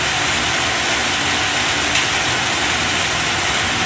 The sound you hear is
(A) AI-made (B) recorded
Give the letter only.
B